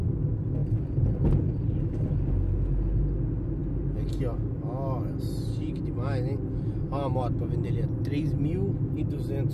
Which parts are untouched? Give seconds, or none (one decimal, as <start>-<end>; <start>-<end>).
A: 0.0-9.5